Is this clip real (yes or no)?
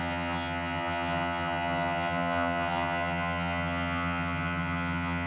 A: no